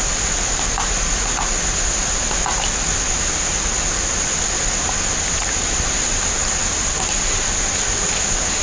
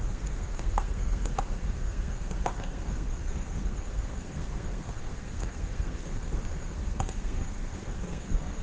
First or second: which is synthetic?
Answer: second